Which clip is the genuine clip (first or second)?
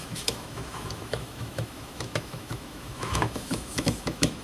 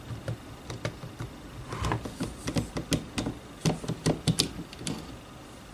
second